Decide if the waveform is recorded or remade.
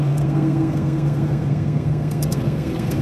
remade